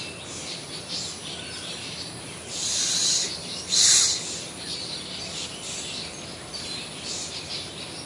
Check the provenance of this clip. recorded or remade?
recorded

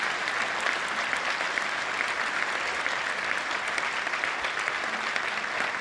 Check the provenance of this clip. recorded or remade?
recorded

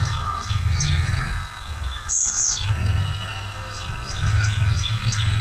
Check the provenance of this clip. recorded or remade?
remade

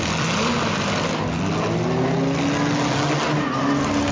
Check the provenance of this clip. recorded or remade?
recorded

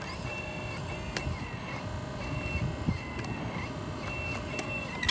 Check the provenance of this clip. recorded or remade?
recorded